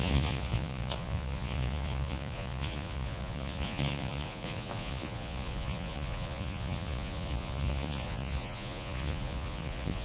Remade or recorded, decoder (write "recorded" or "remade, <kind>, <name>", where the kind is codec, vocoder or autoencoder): remade, vocoder, Vocos